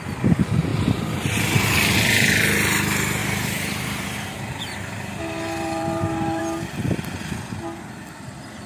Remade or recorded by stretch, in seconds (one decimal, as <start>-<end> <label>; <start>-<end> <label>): 0.0-3.2 recorded; 3.2-6.4 remade; 6.4-8.7 recorded